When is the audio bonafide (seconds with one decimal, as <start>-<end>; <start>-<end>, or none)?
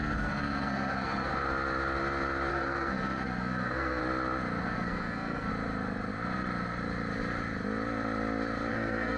1.3-2.5; 4.0-4.6; 5.5-8.7